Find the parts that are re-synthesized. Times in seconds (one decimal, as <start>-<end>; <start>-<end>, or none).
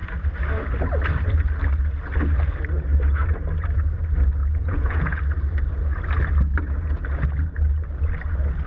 4.4-5.2